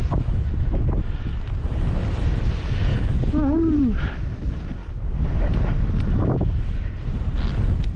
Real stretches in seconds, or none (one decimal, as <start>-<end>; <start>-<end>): 0.0-8.0